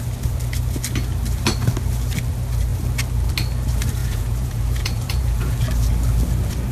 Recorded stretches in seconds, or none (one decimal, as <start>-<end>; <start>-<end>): 0.0-4.0; 5.6-6.7